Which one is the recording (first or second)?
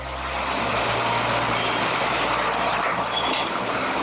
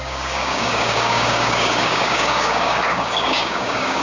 first